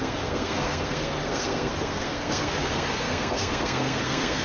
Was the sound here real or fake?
fake